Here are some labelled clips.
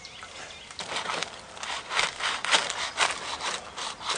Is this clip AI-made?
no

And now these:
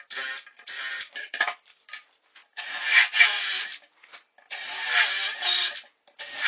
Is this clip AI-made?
yes